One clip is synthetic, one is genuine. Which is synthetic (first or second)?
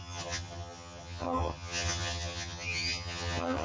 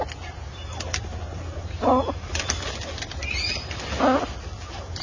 first